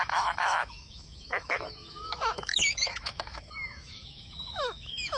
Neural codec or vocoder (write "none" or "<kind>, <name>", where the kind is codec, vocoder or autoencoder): autoencoder, DAC-VAE